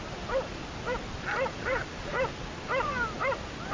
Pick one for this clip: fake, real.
real